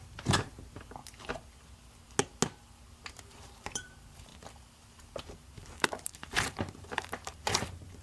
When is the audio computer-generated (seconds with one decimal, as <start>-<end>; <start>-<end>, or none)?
0.0-1.0; 3.1-4.3; 5.2-8.0